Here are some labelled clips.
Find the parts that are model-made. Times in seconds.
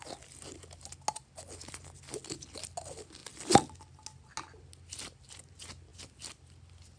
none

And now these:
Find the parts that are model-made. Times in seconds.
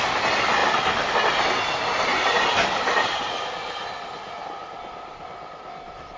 none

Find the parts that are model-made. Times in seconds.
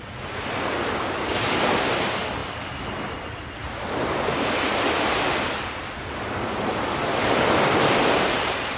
none